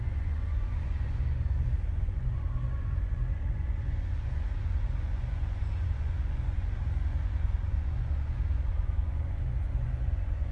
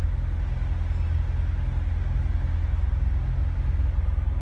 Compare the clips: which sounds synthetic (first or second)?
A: first